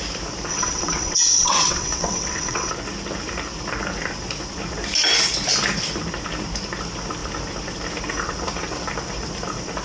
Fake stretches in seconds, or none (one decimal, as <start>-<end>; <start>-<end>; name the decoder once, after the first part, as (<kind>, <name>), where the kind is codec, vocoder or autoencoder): 0.5-2.7 (vocoder, WaveNeXt)